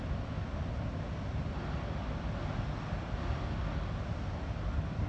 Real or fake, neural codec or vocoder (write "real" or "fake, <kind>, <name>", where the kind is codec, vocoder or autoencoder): real